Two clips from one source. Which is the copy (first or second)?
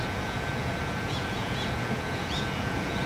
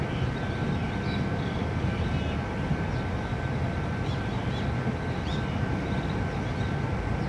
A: first